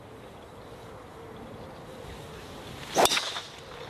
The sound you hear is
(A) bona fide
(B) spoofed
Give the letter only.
A